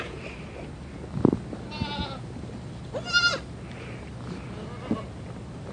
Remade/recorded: recorded